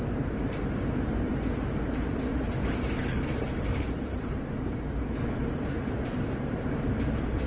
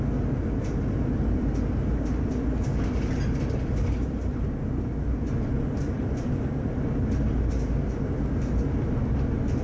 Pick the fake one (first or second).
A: first